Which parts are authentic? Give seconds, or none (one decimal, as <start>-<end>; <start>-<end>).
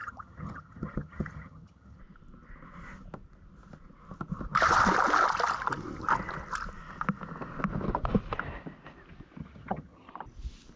2.0-9.4; 10.1-10.8